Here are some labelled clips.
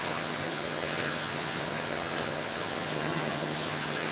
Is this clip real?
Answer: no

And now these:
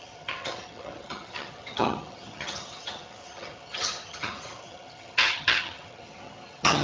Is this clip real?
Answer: no